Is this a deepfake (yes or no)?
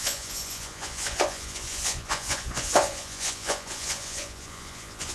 yes